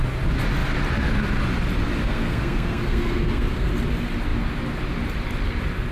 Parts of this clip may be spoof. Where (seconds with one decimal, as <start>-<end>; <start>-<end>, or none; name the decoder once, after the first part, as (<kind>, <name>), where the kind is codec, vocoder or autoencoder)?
2.0-3.7 (codec, SNAC)